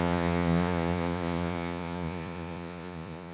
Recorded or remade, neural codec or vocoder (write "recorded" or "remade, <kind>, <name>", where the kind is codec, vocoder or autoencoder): remade, vocoder, Vocos